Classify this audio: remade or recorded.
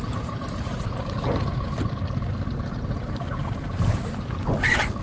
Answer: remade